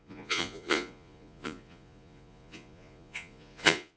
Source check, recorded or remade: remade